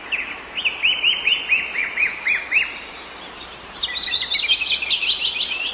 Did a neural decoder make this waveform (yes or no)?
no